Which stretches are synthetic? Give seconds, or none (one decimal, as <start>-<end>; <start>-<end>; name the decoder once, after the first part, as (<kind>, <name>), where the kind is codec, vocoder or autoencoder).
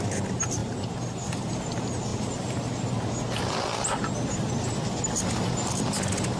0.6-1.3 (vocoder, BigVGAN v2); 2.1-2.9